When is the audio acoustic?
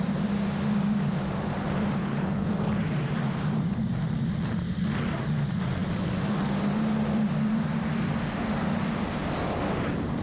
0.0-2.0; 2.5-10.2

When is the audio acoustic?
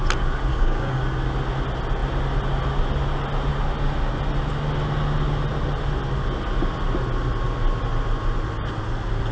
0.0-0.5; 1.0-9.3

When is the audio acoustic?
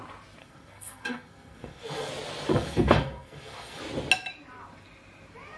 0.0-0.4; 2.1-2.5; 3.8-5.6